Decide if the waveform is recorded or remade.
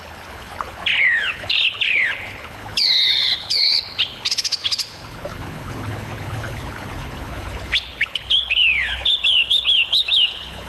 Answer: remade